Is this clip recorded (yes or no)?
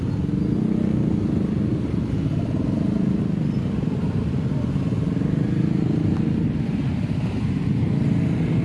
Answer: yes